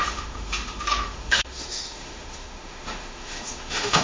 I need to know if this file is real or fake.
fake